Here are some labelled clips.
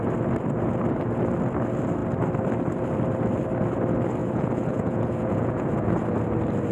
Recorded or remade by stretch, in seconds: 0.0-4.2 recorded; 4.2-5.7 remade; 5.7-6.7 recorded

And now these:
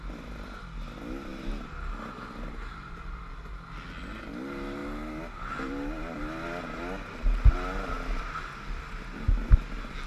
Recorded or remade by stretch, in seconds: 0.0-10.1 recorded

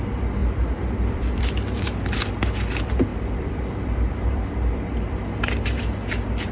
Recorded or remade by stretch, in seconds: 0.0-0.4 recorded; 0.4-1.5 remade; 1.5-3.1 recorded; 3.1-5.4 remade; 5.4-6.5 recorded

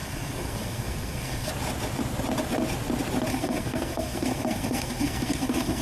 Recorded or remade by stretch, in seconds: 0.0-1.5 remade; 1.5-3.3 recorded; 3.3-5.8 remade

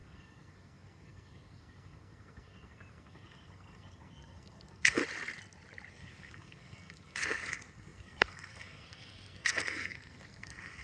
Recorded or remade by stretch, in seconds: 0.0-5.0 remade; 5.0-5.9 recorded; 5.9-10.8 remade

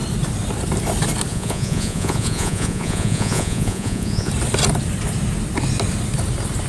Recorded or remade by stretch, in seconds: 0.0-1.3 recorded; 1.3-4.3 remade; 4.3-6.7 recorded

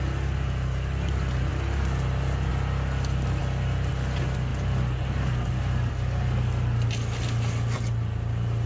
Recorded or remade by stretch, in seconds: 0.0-8.7 recorded